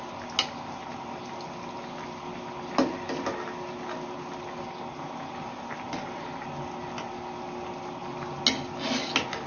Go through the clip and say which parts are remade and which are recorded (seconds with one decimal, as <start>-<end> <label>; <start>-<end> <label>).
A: 0.0-9.5 recorded